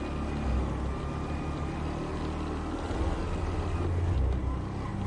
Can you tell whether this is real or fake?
real